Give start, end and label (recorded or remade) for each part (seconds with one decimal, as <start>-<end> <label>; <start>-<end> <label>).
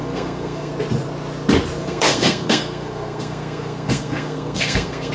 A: 0.0-0.7 remade; 0.7-1.8 recorded; 1.8-5.1 remade